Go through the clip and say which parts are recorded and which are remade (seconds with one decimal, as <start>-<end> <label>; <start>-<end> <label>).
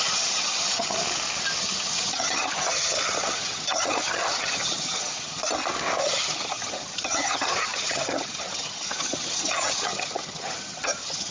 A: 0.0-1.0 remade; 1.0-1.6 recorded; 1.6-5.4 remade; 5.4-6.0 recorded; 6.0-11.3 remade